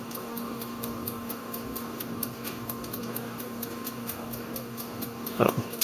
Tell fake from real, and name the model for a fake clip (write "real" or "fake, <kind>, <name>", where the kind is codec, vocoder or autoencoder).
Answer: fake, codec, DAC